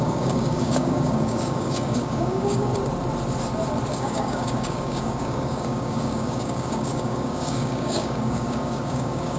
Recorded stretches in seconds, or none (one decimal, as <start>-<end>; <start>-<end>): 2.7-3.9